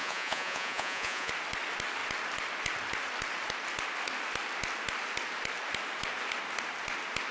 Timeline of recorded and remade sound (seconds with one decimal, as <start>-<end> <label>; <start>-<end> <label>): 0.0-1.3 remade; 1.3-7.3 recorded